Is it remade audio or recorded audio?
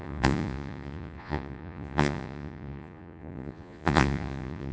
remade